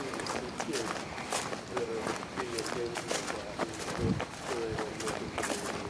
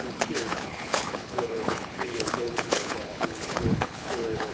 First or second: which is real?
first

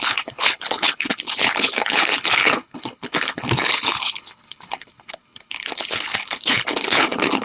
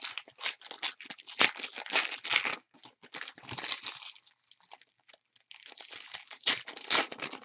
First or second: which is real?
second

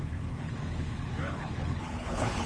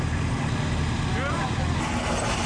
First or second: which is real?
second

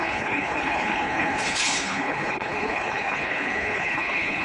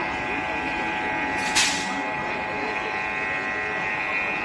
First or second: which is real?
second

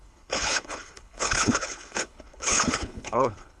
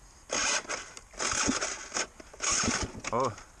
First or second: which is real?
second